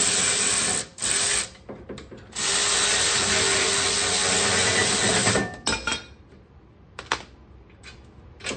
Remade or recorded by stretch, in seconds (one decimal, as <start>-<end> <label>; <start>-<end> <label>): 0.0-8.6 recorded